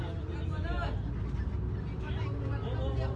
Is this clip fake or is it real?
real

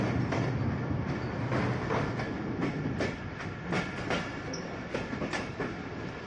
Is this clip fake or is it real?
real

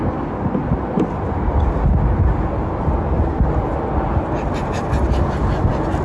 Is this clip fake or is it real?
real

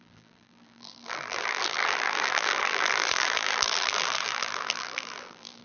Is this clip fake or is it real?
fake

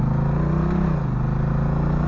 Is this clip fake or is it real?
real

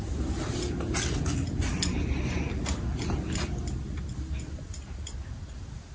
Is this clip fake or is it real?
real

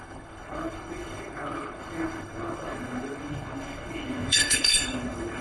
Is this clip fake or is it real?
fake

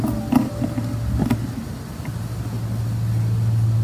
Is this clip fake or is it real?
real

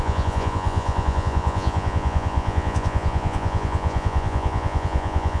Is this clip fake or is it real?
fake